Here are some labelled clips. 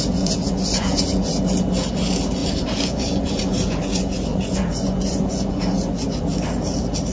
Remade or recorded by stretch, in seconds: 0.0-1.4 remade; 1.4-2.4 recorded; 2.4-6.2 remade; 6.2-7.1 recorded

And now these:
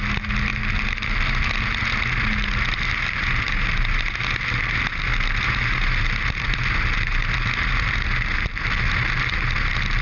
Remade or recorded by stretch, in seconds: 0.0-10.0 recorded

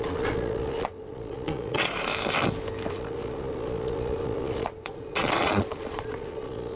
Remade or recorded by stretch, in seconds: 0.0-2.1 remade; 2.1-2.9 recorded; 2.9-6.8 remade

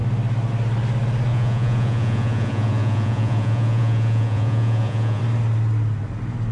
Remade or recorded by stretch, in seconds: 0.0-1.3 recorded; 1.3-5.2 remade; 5.2-6.5 recorded

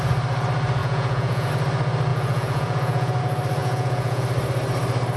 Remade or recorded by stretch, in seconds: 0.0-0.8 recorded; 0.8-1.5 remade; 1.5-2.1 recorded; 2.1-3.2 remade; 3.2-3.6 recorded; 3.6-4.2 remade; 4.2-5.2 recorded

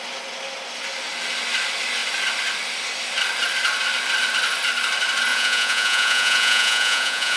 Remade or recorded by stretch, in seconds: 0.0-5.3 recorded; 5.3-7.4 remade

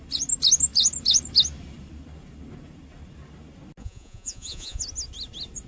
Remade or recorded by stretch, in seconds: 0.0-3.8 recorded; 3.8-4.8 remade; 4.8-5.7 recorded